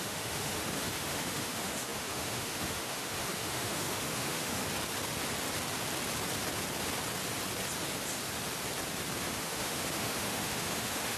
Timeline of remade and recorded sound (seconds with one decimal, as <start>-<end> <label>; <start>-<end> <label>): 0.0-4.6 remade; 4.6-9.2 recorded; 9.2-11.2 remade